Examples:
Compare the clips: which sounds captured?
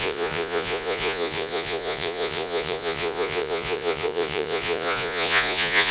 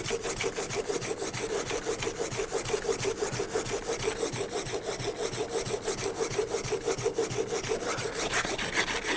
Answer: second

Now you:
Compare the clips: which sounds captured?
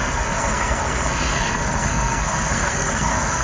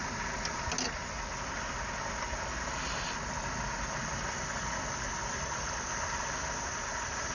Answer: second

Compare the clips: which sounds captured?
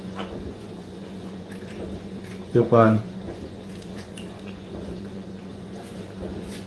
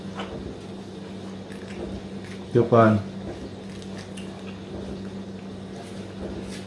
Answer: second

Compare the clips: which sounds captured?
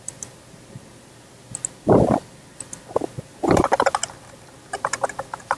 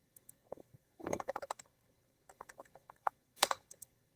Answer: first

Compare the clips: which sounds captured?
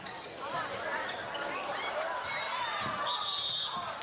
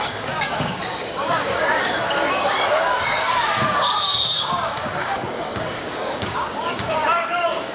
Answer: first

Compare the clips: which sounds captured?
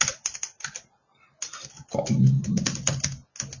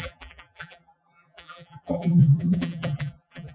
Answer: first